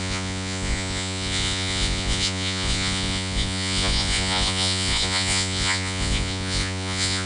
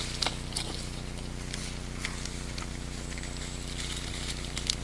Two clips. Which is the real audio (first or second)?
second